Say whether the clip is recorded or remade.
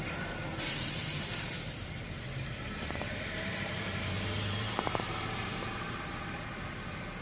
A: remade